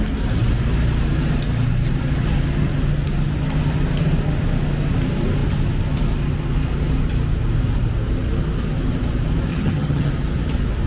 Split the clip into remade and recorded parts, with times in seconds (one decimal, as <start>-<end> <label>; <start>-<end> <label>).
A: 0.0-9.5 recorded; 9.5-10.1 remade; 10.1-10.9 recorded